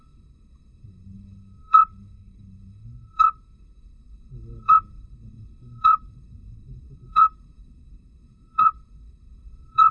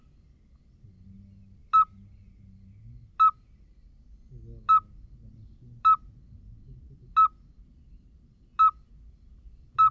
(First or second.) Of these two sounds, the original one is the second